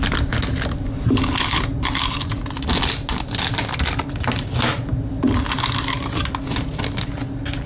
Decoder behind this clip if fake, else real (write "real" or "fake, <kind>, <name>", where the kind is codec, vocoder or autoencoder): real